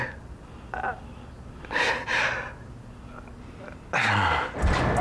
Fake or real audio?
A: real